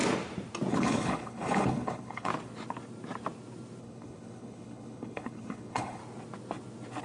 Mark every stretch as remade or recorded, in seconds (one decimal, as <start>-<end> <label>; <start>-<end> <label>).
0.0-0.7 recorded; 0.7-2.3 remade; 2.3-3.8 recorded; 3.8-6.0 remade; 6.0-7.0 recorded